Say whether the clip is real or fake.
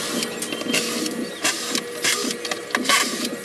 fake